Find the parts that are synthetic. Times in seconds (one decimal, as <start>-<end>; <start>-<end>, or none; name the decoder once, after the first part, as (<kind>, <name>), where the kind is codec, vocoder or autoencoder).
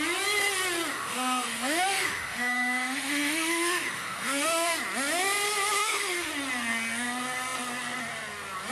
0.9-4.7 (autoencoder, DAC-VAE); 5.8-6.3